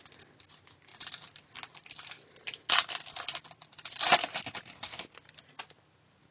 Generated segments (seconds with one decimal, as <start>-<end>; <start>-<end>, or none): none